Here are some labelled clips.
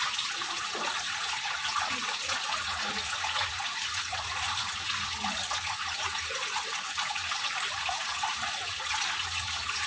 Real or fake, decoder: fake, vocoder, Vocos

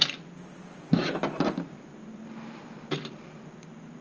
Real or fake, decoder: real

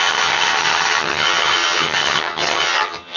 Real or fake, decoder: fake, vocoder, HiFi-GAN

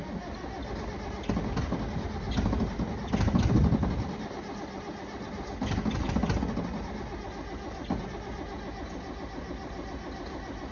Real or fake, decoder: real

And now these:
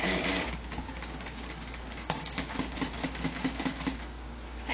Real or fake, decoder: fake, codec, DAC